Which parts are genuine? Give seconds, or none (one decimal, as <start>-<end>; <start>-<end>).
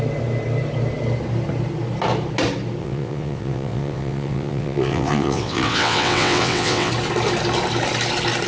0.0-2.8; 6.9-8.5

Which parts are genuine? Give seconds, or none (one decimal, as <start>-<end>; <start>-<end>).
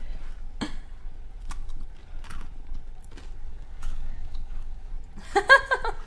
0.0-3.5; 4.9-6.1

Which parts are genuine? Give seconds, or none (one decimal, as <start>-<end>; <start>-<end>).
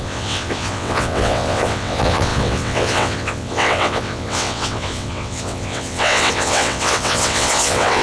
none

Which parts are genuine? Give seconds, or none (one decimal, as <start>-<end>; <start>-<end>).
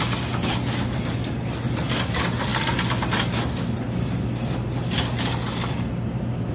0.0-6.5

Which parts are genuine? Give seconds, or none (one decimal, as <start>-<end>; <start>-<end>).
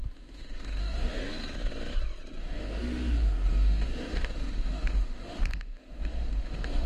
1.2-2.4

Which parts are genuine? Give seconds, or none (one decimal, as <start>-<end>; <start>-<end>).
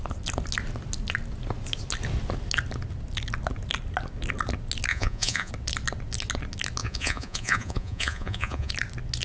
0.0-4.9; 5.5-6.8; 8.7-9.2